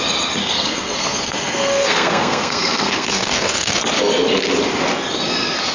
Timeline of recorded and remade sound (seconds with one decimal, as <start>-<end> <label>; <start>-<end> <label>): 0.0-0.4 recorded; 0.4-3.8 remade; 3.8-5.7 recorded